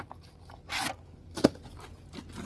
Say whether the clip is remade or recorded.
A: recorded